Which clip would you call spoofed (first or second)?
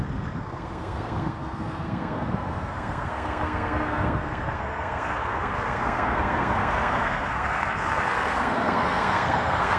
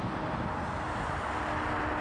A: first